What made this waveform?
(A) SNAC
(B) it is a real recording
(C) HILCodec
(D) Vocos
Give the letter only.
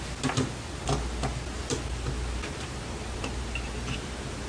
B